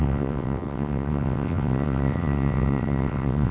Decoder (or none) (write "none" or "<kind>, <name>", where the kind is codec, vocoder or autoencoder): vocoder, WaveNeXt